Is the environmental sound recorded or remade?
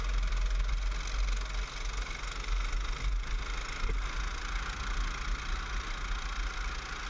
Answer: recorded